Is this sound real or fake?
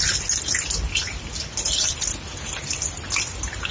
real